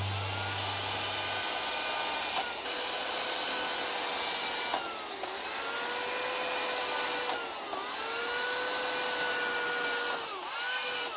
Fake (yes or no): no